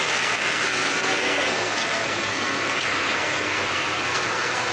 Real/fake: fake